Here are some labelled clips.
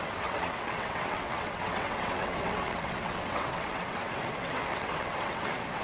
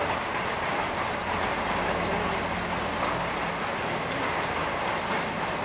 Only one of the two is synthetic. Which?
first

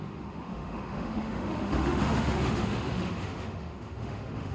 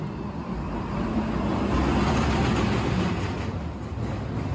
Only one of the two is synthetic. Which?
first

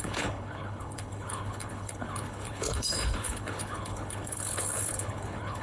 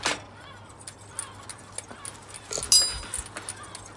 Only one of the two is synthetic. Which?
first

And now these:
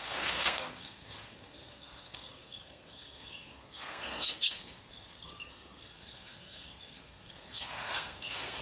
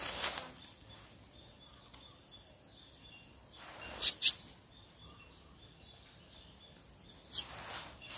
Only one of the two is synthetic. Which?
first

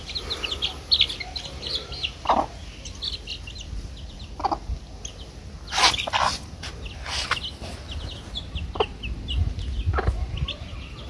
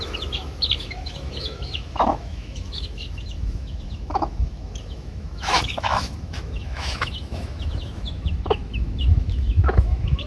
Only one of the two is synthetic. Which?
second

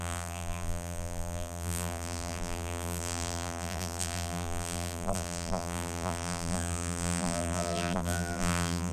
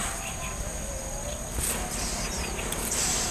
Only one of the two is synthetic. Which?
first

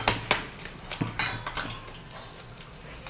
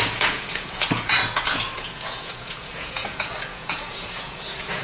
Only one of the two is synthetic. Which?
second